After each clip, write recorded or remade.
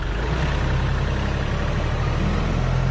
recorded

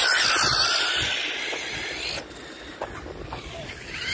recorded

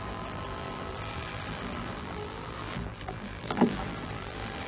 remade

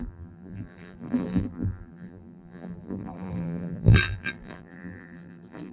remade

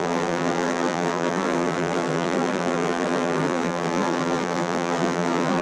remade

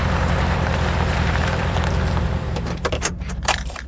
remade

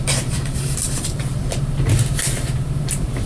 remade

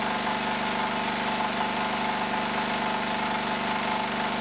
recorded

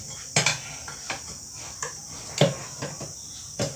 recorded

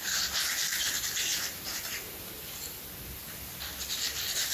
recorded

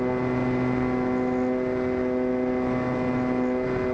recorded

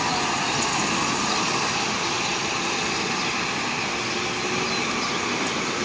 recorded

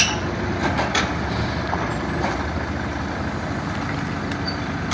remade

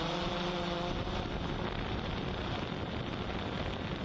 recorded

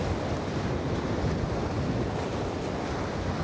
recorded